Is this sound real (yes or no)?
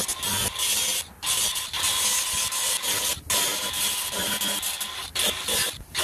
yes